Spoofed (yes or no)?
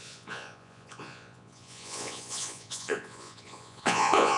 yes